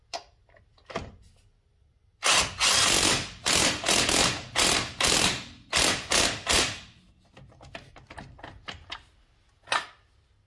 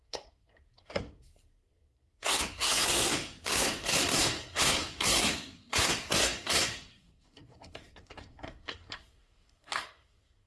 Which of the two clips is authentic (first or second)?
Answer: first